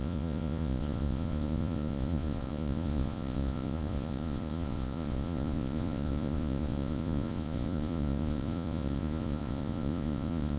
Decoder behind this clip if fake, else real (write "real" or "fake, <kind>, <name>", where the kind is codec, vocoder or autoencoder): fake, vocoder, Vocos